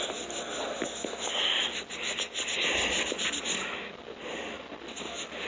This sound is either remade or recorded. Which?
recorded